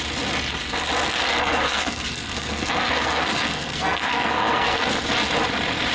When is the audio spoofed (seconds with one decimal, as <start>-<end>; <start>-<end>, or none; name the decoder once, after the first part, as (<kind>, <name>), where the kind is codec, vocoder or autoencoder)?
1.3-4.8 (codec, SNAC)